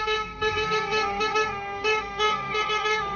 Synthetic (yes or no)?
yes